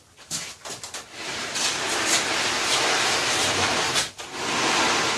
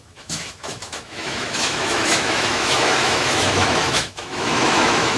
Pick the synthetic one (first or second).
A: second